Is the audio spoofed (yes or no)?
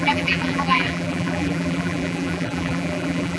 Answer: yes